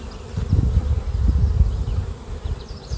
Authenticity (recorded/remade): recorded